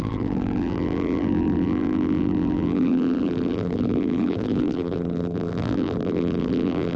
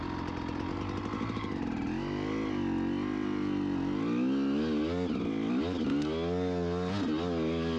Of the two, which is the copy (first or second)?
first